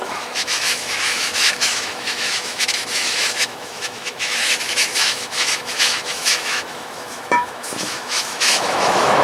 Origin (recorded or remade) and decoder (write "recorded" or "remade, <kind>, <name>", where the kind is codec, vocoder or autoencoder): remade, autoencoder, DAC-VAE